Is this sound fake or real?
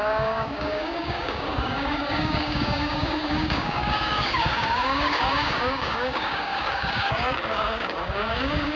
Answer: fake